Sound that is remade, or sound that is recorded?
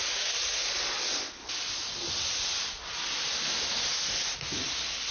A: recorded